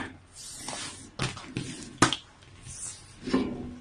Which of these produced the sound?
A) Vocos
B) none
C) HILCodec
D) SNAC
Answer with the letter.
B